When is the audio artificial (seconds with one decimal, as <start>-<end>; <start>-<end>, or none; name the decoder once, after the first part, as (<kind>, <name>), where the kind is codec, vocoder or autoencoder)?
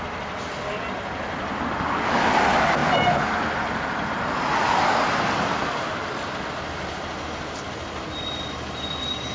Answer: none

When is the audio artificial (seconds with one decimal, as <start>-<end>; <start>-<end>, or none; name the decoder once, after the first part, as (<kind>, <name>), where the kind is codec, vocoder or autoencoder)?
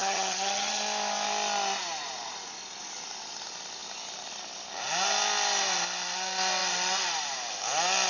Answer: 0.0-0.8 (vocoder, HiFi-GAN)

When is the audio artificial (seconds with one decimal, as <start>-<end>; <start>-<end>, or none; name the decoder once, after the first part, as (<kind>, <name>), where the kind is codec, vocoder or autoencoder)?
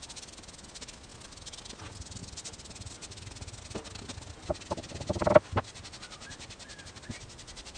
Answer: none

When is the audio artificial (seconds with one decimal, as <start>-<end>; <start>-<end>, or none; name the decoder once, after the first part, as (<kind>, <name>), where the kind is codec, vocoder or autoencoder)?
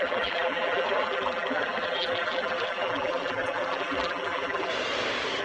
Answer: 0.0-4.7 (vocoder, BigVGAN v2)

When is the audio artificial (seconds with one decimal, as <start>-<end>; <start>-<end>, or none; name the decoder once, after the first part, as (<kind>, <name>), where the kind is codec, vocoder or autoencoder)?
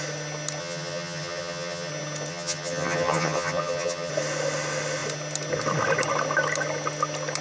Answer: 0.6-1.9 (vocoder, HiFi-GAN); 2.3-4.1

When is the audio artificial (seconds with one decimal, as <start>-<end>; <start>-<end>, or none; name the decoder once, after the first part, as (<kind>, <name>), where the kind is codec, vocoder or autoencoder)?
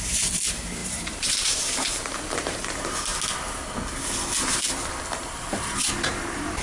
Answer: 0.0-3.1 (vocoder, BigVGAN v2); 4.9-6.6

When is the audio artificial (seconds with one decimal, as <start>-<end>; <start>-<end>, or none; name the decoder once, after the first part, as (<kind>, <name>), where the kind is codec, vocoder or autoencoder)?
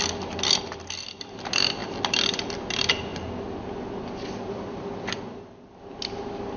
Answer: none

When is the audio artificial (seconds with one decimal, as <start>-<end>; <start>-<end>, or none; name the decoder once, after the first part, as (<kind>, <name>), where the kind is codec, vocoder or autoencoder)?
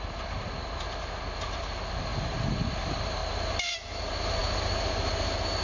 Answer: none